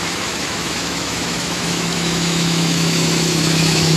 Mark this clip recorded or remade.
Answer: remade